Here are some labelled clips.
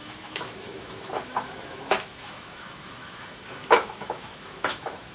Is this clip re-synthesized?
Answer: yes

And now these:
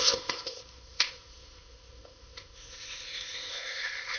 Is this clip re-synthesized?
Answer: yes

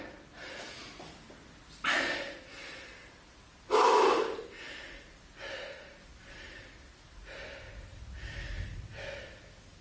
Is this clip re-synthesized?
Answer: no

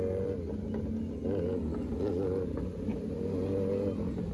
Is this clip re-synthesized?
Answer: no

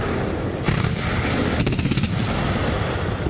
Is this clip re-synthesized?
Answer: no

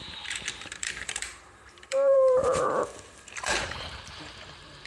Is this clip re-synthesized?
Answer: yes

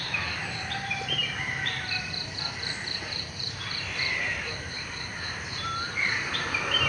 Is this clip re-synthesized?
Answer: yes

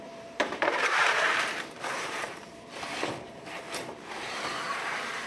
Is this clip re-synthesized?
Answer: yes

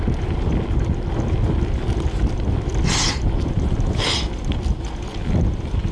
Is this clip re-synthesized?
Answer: no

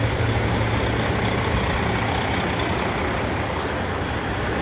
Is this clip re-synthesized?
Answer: no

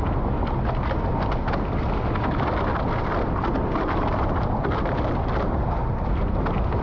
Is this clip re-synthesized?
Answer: no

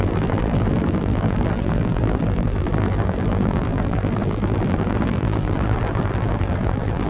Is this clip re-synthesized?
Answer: yes